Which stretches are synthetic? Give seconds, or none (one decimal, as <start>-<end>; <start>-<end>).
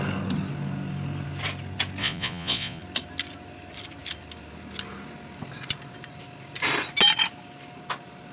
2.0-2.8